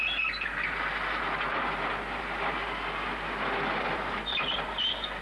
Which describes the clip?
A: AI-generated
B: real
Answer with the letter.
B